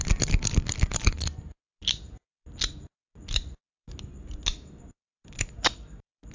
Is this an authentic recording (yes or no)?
yes